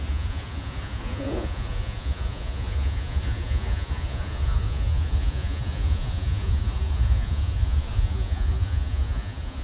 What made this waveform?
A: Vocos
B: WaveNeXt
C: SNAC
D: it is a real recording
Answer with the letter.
A